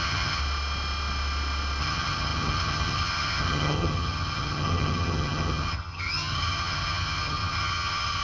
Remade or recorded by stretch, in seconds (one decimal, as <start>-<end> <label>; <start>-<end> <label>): 0.0-0.4 remade; 0.4-1.8 recorded; 1.8-8.2 remade